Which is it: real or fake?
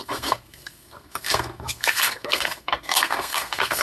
fake